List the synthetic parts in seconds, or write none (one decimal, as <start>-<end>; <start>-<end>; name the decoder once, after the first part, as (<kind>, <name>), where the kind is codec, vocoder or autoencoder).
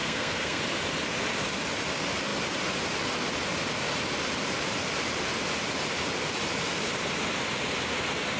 0.0-0.6 (codec, SNAC)